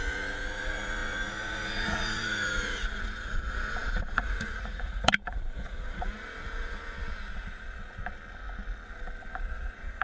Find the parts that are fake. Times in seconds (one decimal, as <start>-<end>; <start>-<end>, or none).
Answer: 0.0-8.0; 9.4-10.0